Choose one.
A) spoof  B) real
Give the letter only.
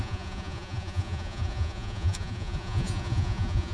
A